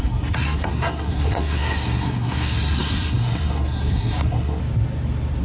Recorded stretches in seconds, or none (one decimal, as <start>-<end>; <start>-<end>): 4.6-5.4